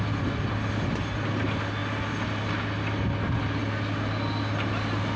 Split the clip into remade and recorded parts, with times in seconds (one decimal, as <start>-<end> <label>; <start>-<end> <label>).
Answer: 0.0-5.2 recorded